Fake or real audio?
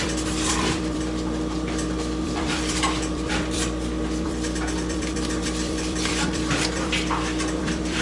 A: fake